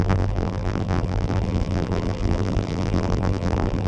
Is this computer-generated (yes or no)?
yes